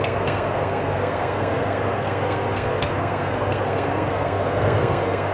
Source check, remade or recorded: remade